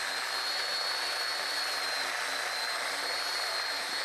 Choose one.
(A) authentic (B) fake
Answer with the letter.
A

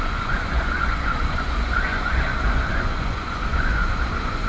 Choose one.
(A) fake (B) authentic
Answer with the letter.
A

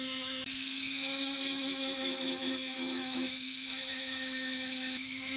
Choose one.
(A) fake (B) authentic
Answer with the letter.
A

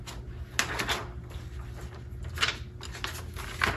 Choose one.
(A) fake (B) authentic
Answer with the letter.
B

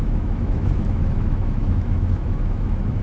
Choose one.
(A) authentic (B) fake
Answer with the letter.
B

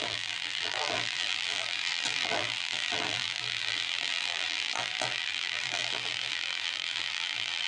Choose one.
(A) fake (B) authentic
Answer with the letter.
A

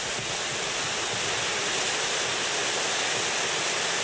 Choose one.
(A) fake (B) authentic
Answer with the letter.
B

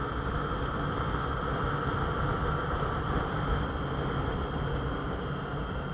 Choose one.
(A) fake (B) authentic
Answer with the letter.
B